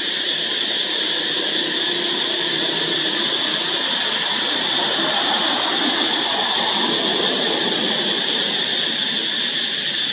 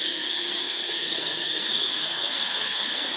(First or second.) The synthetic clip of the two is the second